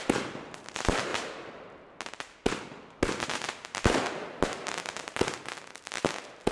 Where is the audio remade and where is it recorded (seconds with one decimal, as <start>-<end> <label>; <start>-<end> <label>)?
0.0-6.5 recorded